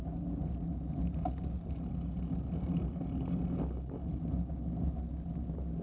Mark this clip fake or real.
real